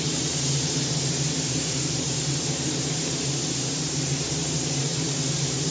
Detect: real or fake fake